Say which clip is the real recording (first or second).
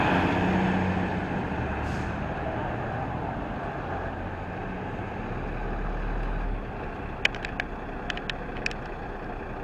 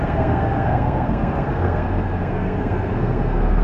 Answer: first